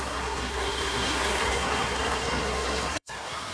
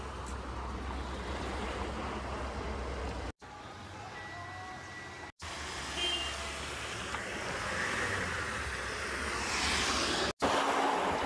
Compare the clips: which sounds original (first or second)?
second